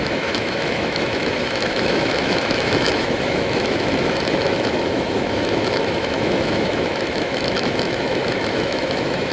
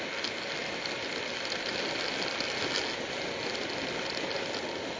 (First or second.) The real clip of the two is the second